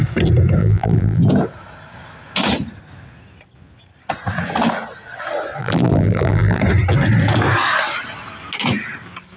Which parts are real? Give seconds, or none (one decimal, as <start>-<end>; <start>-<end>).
0.0-0.6; 1.2-5.6; 6.6-9.4